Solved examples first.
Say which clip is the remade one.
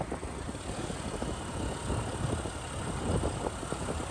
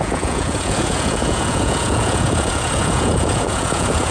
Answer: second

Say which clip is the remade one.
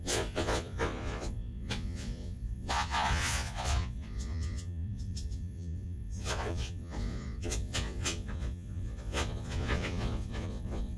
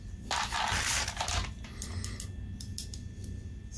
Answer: first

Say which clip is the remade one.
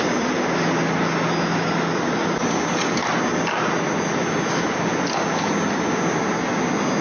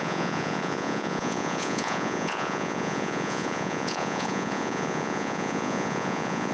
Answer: second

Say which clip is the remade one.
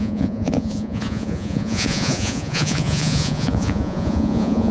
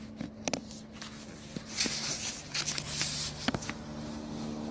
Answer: first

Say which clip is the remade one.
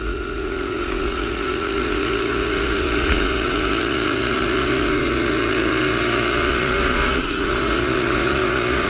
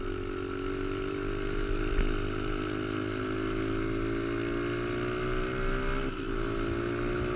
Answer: first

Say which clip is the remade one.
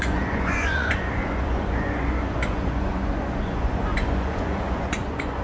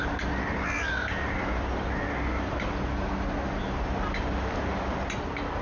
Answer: first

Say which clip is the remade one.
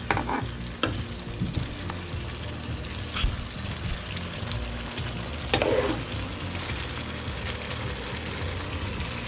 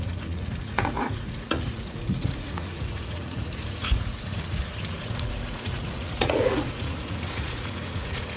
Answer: second